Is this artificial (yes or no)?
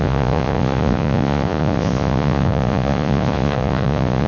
yes